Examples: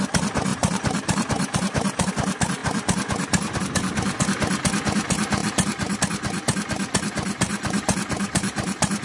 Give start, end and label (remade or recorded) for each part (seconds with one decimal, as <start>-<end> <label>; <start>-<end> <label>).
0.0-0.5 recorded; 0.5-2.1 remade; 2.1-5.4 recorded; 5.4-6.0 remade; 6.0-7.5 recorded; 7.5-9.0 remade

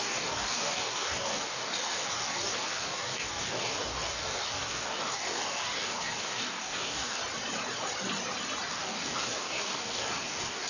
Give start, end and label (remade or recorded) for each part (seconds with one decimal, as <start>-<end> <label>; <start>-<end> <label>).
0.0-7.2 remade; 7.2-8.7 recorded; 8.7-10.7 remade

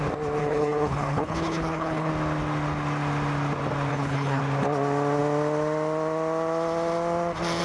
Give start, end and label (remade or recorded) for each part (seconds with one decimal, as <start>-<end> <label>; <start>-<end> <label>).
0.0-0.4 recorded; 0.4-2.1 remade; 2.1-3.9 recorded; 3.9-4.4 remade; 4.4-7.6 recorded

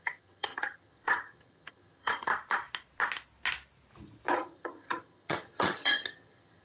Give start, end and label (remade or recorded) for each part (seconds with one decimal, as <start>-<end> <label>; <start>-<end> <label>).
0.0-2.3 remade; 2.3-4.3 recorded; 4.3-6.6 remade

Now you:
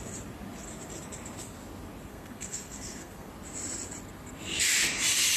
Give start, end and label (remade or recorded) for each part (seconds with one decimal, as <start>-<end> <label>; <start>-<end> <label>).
0.0-2.1 recorded; 2.1-3.3 remade; 3.3-5.4 recorded